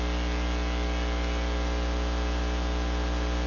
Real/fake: real